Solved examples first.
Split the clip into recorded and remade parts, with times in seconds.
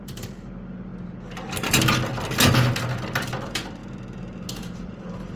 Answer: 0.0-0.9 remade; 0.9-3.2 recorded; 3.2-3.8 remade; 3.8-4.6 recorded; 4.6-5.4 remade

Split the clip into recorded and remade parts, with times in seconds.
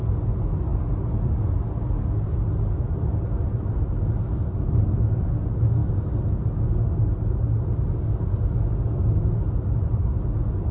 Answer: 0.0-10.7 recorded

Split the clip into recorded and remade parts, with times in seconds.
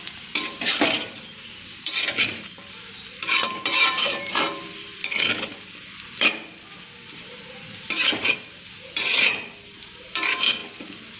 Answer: 0.0-5.0 remade; 5.0-6.2 recorded; 6.2-10.6 remade; 10.6-11.2 recorded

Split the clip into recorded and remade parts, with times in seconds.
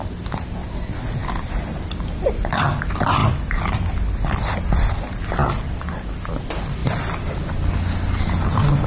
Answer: 0.0-1.2 recorded; 1.2-2.3 remade; 2.3-3.2 recorded; 3.2-5.0 remade; 5.0-8.9 recorded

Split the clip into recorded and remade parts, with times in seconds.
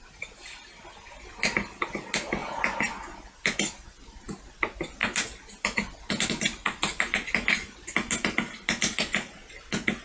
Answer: 0.0-10.0 recorded